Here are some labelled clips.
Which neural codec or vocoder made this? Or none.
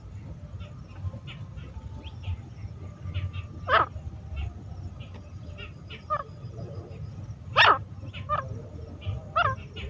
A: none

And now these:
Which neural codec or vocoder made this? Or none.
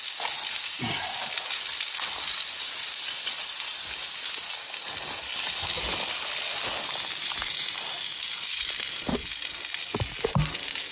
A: none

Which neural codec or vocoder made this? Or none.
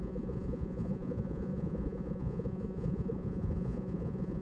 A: vocoder, Vocos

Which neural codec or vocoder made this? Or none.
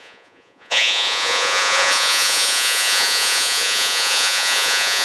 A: vocoder, Vocos